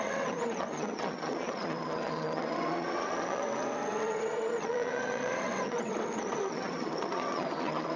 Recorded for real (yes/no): no